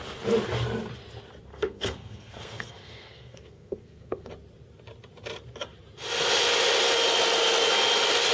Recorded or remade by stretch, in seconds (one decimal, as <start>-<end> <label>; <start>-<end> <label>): 0.0-1.5 recorded; 1.5-4.3 remade; 4.3-8.3 recorded